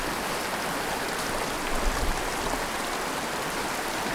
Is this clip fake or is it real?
real